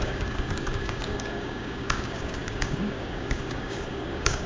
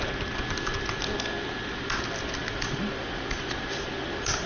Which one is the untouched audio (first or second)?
second